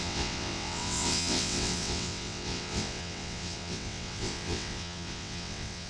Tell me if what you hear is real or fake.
fake